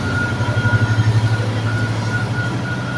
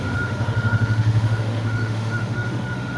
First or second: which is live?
first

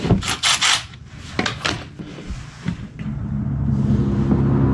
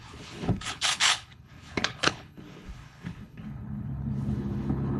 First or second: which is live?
first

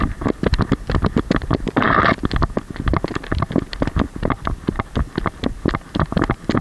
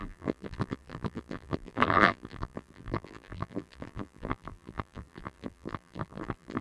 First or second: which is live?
first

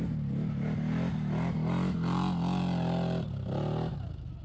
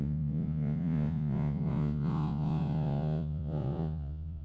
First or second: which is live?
first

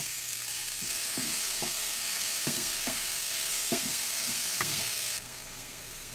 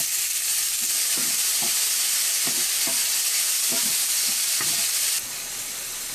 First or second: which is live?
second